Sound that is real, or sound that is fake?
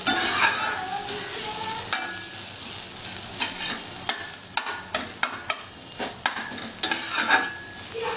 real